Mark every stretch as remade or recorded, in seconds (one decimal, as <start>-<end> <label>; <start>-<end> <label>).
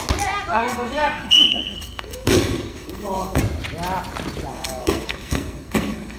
0.0-0.5 recorded; 0.5-3.4 remade; 3.4-4.5 recorded; 4.5-6.2 remade